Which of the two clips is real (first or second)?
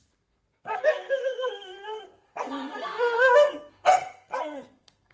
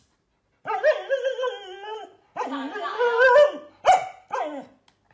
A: second